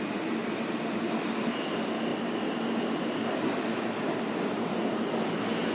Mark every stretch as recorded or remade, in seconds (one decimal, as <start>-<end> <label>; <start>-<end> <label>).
0.0-0.4 recorded; 0.4-1.7 remade; 1.7-5.7 recorded